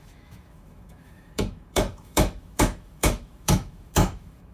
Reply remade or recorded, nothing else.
remade